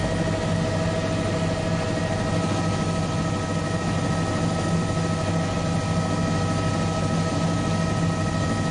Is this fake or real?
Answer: real